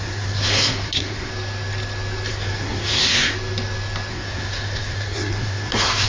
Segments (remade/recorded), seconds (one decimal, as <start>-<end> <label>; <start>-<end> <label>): 0.0-1.3 remade; 1.3-2.3 recorded; 2.3-3.3 remade; 3.3-4.1 recorded; 4.1-6.1 remade